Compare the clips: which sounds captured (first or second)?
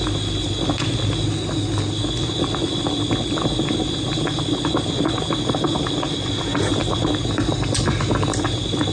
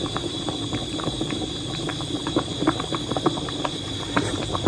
first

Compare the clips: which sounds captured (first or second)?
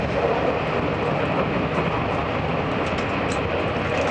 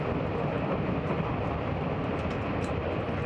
first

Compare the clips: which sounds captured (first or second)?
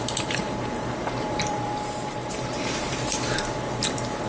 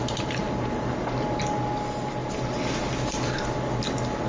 second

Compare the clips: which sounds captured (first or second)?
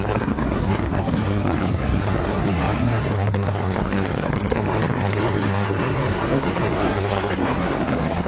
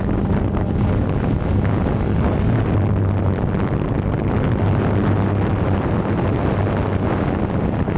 second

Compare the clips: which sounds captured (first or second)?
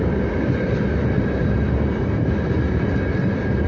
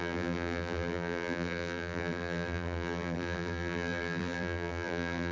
first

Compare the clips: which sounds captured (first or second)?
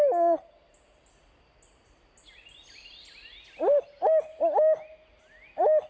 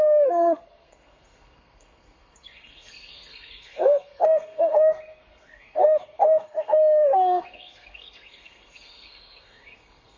first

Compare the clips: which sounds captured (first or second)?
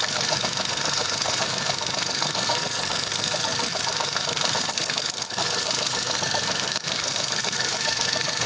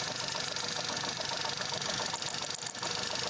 second